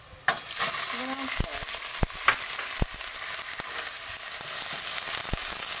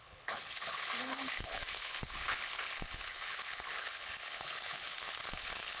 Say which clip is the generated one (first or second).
second